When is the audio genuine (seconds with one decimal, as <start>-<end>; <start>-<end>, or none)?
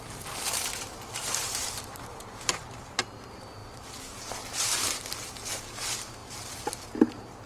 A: none